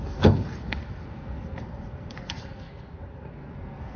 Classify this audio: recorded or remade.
remade